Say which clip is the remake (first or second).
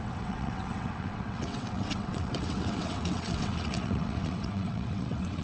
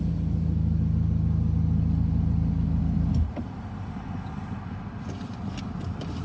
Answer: first